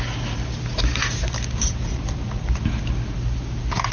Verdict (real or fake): real